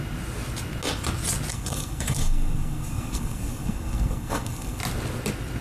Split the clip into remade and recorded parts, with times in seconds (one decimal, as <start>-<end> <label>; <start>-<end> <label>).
0.0-1.5 recorded; 1.5-4.8 remade; 4.8-5.6 recorded